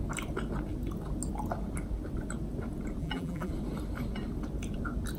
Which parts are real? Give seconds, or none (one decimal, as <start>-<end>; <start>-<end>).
0.0-3.0; 3.5-5.2